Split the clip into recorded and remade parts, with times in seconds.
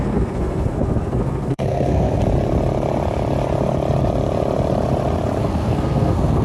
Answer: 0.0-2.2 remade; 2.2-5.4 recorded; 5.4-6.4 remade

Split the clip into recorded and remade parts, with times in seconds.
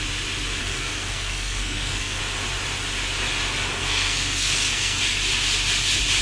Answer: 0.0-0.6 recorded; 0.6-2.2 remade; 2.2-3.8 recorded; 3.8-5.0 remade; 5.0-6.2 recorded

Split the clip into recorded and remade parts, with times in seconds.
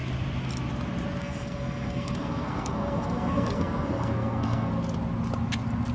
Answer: 0.0-1.2 recorded; 1.2-4.7 remade; 4.7-5.9 recorded